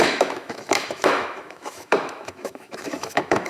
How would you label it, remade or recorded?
remade